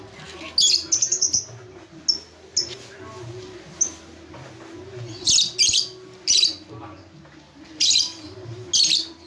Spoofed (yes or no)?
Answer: no